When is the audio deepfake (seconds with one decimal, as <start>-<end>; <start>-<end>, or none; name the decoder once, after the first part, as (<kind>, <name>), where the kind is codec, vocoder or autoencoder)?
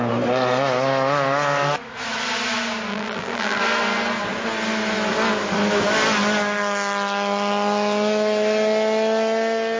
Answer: 2.9-3.6 (vocoder, BigVGAN v2)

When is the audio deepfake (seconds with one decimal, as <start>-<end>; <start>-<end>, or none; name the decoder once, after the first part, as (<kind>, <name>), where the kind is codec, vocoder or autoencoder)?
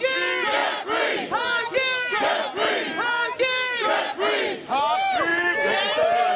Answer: 5.3-6.4 (vocoder, BigVGAN v2)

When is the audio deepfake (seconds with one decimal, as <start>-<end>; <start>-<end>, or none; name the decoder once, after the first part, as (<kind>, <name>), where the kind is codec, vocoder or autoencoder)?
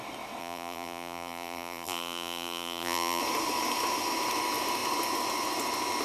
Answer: 0.4-3.2 (vocoder, BigVGAN v2)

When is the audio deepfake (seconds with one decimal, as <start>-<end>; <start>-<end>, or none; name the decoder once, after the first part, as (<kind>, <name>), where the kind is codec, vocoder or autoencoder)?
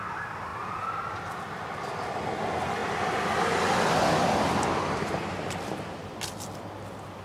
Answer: 2.8-7.2 (vocoder, BigVGAN v2)